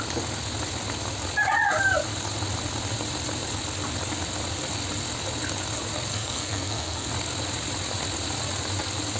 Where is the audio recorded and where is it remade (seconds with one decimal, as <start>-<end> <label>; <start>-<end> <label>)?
0.0-6.1 recorded; 6.1-7.1 remade; 7.1-9.2 recorded